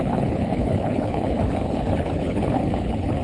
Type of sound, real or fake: fake